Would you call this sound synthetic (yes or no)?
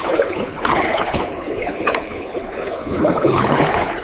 yes